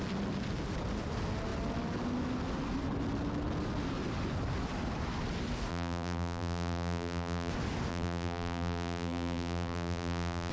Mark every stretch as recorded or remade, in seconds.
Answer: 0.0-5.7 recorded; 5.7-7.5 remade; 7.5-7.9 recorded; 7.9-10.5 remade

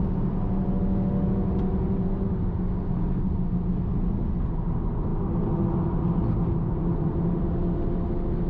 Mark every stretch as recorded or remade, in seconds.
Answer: 0.0-8.5 recorded

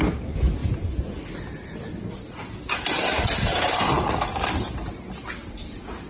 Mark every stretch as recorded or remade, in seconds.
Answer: 0.0-6.1 recorded

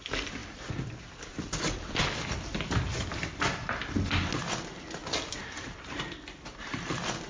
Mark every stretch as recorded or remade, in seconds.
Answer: 0.0-2.5 remade; 2.5-4.5 recorded; 4.5-5.0 remade; 5.0-5.6 recorded; 5.6-7.3 remade

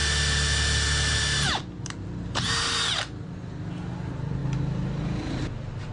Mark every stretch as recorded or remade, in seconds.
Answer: 0.0-4.4 recorded; 4.4-5.4 remade; 5.4-5.9 recorded

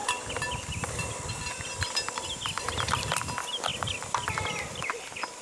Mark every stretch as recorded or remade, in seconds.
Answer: 0.0-3.1 remade; 3.1-3.7 recorded; 3.7-5.4 remade